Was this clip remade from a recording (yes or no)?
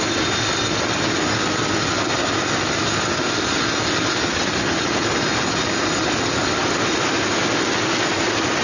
no